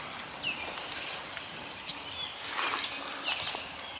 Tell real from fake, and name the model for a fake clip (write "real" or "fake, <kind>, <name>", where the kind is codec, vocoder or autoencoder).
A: real